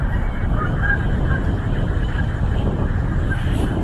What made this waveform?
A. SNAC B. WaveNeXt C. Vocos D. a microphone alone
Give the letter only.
D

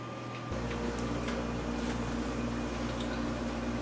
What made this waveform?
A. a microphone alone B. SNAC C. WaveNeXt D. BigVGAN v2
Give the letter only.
A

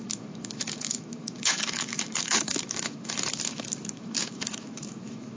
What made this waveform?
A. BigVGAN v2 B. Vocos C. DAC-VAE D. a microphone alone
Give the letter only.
C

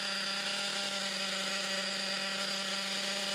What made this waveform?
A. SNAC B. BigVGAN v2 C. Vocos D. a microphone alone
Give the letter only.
D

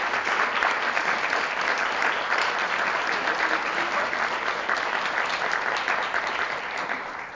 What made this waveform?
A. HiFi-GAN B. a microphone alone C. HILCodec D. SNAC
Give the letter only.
B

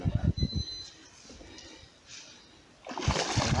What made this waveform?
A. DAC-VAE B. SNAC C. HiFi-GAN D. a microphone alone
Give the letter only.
D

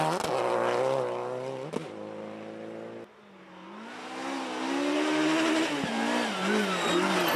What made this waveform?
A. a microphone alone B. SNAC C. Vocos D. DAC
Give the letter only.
A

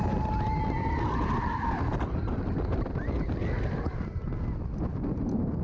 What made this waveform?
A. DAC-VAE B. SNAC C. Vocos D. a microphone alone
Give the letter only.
D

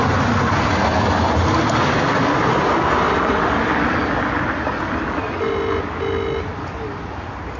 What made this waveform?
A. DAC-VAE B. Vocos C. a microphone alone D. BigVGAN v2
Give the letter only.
C